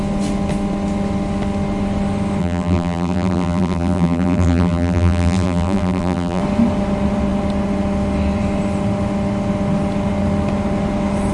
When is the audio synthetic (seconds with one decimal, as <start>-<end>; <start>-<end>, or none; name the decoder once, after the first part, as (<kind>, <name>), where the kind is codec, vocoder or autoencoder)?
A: 2.4-6.4 (vocoder, BigVGAN v2)